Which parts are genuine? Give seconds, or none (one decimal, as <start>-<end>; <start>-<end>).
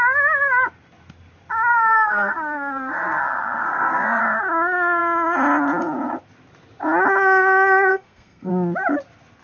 0.0-1.7; 3.2-3.6; 4.2-7.9; 8.5-9.4